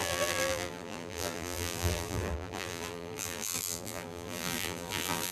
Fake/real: fake